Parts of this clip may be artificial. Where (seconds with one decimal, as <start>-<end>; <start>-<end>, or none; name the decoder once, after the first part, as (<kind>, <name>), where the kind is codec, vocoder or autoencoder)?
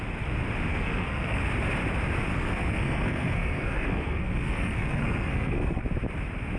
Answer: 0.7-1.4 (codec, SNAC); 2.3-5.8